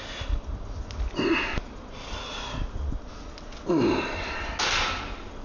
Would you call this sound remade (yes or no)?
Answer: no